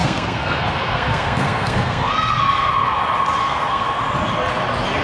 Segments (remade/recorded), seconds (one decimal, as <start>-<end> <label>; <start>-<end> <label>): 0.0-2.7 remade; 2.7-3.4 recorded; 3.4-4.0 remade; 4.0-5.0 recorded